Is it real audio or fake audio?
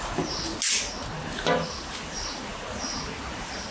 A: real